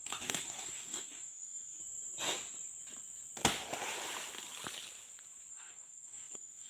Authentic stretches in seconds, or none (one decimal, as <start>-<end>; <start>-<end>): 1.8-5.5

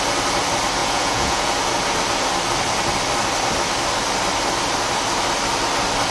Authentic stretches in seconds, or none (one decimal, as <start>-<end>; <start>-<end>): 0.0-0.8; 1.5-6.1